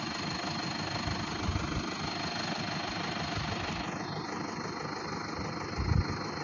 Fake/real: real